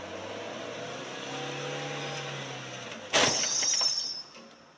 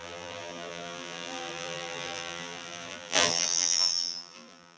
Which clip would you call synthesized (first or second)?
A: second